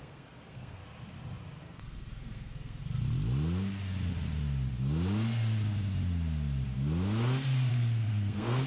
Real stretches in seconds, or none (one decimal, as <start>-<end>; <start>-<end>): 0.8-1.6; 2.8-7.7